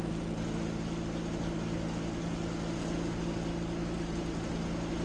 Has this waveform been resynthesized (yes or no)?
no